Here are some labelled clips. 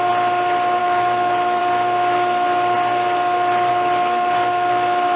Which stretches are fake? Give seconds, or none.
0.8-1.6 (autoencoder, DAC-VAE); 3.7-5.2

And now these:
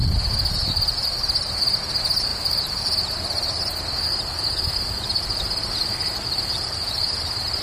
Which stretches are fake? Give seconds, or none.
none